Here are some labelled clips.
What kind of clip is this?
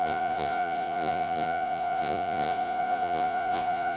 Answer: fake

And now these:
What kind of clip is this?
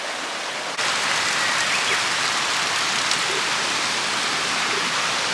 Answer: real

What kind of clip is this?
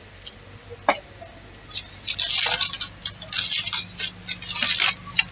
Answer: real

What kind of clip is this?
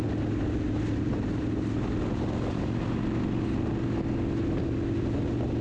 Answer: real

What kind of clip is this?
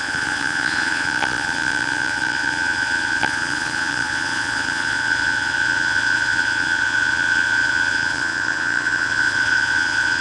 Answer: fake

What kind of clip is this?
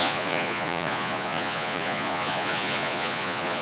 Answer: fake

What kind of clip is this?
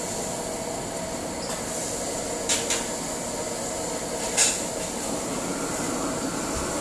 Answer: real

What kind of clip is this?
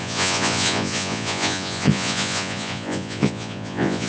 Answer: fake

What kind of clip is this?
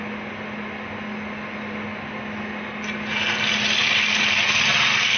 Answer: real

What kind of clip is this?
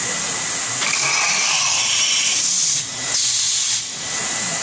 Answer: real